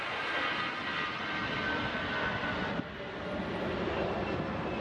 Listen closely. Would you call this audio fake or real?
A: real